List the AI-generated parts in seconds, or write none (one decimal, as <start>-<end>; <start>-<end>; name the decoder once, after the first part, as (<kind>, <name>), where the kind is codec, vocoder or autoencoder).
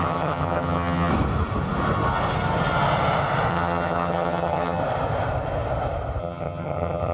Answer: 0.0-1.1 (vocoder, HiFi-GAN); 3.5-4.8; 6.2-7.1